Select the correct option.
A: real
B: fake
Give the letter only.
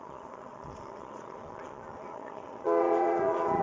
B